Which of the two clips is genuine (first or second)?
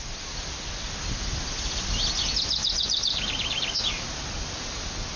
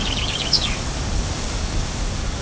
first